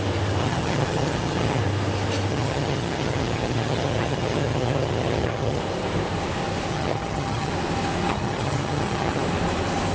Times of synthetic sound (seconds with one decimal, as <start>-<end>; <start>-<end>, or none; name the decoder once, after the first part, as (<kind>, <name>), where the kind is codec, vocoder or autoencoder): 0.4-1.6 (vocoder, HiFi-GAN); 2.3-5.6; 6.7-7.5; 8.0-9.2